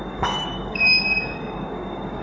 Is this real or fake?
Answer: fake